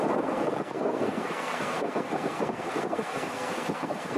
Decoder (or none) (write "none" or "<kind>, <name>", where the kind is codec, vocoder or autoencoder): codec, SNAC